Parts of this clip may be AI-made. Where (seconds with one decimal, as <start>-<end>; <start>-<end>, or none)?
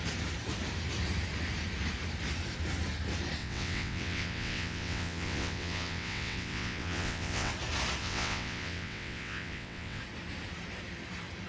3.4-7.5; 8.0-10.0